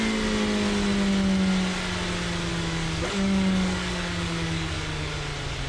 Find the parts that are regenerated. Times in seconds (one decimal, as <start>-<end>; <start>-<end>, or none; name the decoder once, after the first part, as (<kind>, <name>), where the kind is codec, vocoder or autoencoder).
2.5-5.1 (codec, DAC)